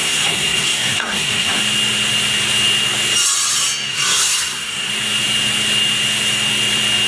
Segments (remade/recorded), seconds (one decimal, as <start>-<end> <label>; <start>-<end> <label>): 0.0-1.6 remade; 1.6-3.9 recorded; 3.9-4.9 remade; 4.9-7.1 recorded